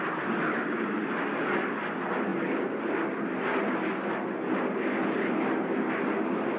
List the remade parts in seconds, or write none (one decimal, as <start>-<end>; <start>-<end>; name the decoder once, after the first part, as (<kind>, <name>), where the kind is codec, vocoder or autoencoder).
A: none